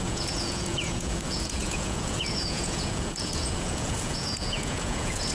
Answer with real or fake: fake